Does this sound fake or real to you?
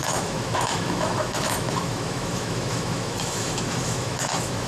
fake